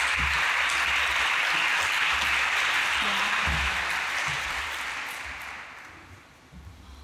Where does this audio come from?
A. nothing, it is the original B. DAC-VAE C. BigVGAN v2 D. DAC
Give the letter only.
C